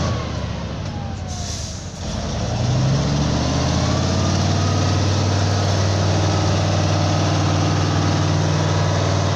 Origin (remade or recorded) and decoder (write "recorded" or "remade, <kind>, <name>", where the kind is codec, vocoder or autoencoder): recorded